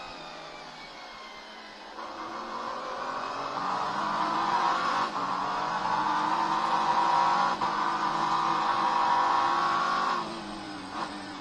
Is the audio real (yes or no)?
no